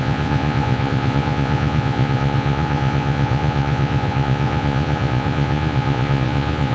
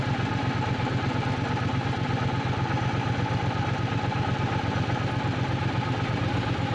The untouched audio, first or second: second